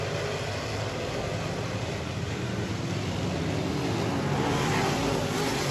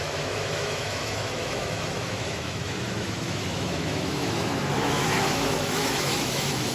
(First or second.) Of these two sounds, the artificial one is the second